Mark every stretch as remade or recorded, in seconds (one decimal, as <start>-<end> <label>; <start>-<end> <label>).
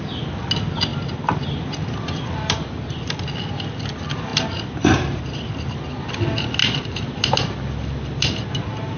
0.0-0.9 recorded; 0.9-3.3 remade; 3.3-4.3 recorded; 4.3-5.5 remade; 5.5-6.6 recorded; 6.6-9.0 remade